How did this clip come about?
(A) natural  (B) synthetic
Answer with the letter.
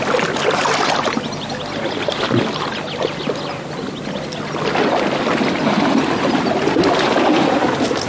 A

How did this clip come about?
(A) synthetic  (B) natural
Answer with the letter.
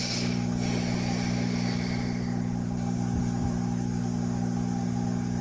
B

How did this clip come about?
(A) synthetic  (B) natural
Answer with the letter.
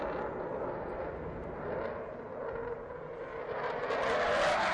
B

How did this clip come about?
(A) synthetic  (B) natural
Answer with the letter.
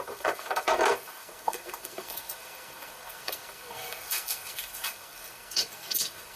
A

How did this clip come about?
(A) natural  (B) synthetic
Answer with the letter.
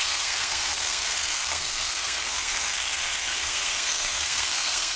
B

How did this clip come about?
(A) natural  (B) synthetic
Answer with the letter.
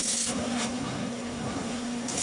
B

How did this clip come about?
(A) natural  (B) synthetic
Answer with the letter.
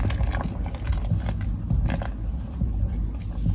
A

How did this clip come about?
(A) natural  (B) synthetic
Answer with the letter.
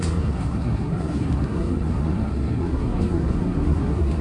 B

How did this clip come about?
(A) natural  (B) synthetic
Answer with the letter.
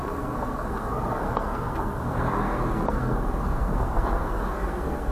B